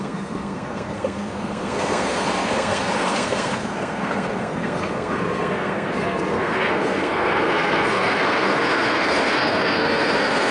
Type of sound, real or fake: fake